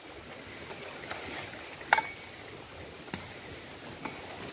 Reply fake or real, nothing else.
real